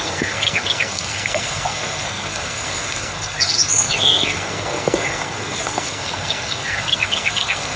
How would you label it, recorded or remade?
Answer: remade